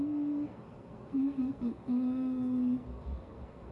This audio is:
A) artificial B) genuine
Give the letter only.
A